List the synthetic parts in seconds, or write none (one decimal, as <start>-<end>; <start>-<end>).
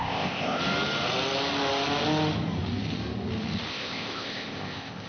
0.0-0.6; 3.7-5.1